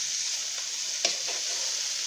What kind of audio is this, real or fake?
real